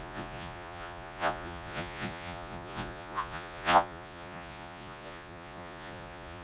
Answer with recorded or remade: remade